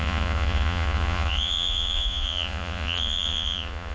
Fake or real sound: fake